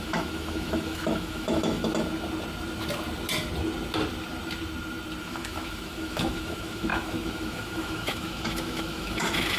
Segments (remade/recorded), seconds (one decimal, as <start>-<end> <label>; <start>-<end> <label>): 0.0-1.8 remade; 1.8-5.2 recorded; 5.2-9.6 remade